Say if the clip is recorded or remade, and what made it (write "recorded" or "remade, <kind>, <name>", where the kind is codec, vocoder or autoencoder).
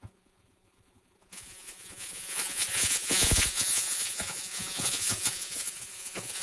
remade, vocoder, Vocos